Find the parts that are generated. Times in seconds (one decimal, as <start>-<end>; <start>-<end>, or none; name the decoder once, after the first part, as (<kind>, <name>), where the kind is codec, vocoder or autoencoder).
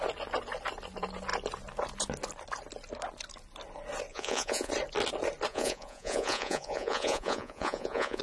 4.1-4.7 (vocoder, Vocos); 5.5-8.2